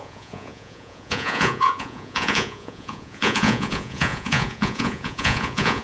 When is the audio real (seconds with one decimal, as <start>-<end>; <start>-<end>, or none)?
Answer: none